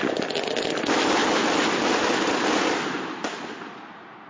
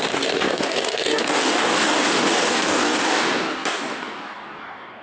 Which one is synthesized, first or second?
second